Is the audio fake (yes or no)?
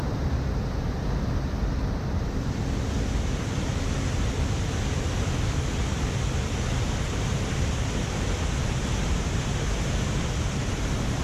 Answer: no